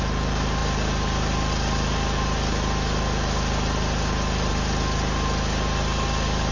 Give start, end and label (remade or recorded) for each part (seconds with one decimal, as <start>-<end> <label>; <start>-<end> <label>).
0.0-6.5 recorded